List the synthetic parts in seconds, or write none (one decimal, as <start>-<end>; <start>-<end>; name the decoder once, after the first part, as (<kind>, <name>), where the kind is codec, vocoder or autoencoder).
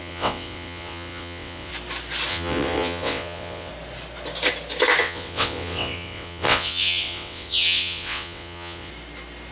0.0-1.7 (vocoder, WaveNeXt); 2.3-3.7; 5.0-8.9